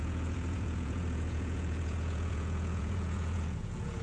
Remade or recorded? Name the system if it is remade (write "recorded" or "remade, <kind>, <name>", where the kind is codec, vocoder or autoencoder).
remade, vocoder, Vocos